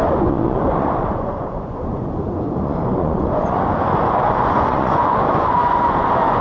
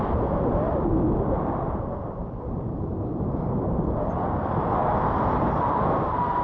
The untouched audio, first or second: second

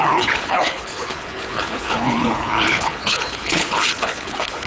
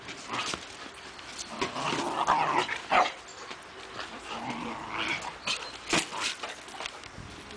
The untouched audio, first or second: second